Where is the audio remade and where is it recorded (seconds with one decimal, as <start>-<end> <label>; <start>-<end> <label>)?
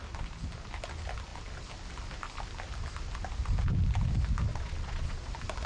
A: 0.0-4.5 recorded; 4.5-5.3 remade; 5.3-5.7 recorded